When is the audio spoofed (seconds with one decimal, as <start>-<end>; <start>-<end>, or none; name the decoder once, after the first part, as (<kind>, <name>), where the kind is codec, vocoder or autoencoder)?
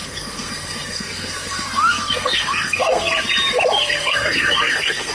0.0-3.1 (codec, SNAC); 3.8-5.1